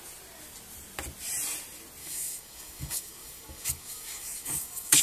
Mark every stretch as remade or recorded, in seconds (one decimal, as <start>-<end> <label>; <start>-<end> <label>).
0.0-2.0 recorded; 2.0-5.0 remade